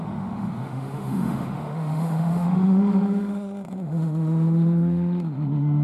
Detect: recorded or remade remade